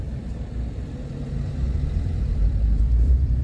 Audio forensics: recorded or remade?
remade